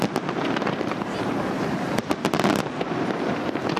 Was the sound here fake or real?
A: real